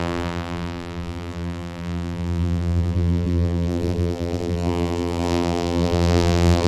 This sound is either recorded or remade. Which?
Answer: remade